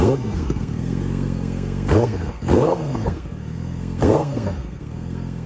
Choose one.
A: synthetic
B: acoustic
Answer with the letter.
A